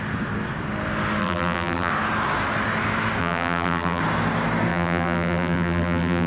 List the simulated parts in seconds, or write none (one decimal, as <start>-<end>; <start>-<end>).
1.2-1.9; 3.2-4.0; 4.7-6.3